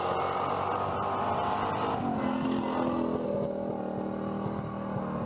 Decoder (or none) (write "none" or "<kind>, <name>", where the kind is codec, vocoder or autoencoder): none